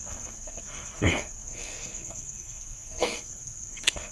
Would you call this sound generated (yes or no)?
yes